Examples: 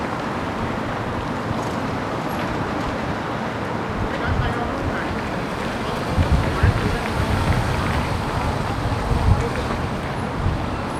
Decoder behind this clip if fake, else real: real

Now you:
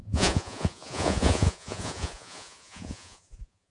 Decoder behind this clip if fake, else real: fake, vocoder, Vocos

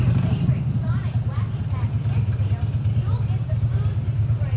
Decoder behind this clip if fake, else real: fake, vocoder, BigVGAN v2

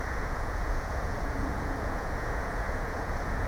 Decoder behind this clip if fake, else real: fake, vocoder, Vocos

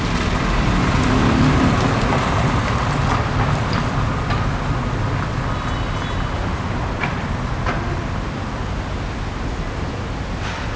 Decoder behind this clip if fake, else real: real